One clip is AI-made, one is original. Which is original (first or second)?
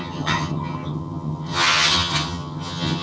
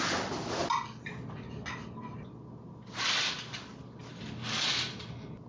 second